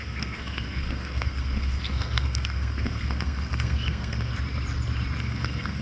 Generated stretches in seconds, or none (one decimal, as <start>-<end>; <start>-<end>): 0.0-4.3; 5.2-5.8